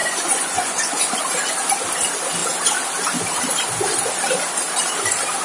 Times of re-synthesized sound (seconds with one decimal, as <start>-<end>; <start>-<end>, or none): 0.0-1.2